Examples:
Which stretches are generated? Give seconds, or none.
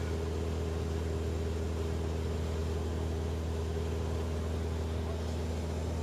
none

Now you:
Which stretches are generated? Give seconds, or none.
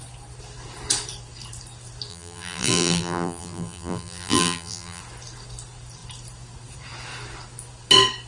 2.1-5.0 (vocoder, BigVGAN v2)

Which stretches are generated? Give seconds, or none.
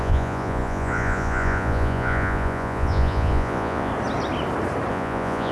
0.0-3.9 (vocoder, Vocos); 4.9-5.5